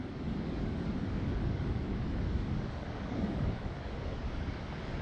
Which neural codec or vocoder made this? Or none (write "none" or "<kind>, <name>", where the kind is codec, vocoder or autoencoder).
codec, DAC